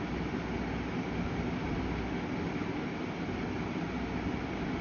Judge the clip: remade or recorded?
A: recorded